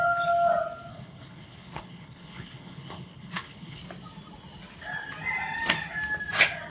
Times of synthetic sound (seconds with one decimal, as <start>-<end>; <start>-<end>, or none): 0.9-3.8